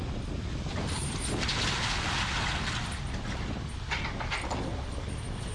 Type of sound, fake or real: real